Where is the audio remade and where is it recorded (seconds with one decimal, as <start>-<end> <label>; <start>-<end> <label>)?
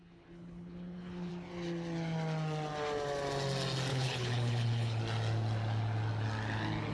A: 0.0-1.3 remade; 1.3-3.9 recorded; 3.9-5.0 remade; 5.0-6.9 recorded